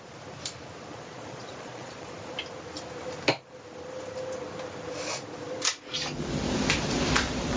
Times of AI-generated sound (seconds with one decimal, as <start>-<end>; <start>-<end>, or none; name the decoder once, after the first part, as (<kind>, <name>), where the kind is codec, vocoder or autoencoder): 0.9-2.1 (vocoder, Vocos)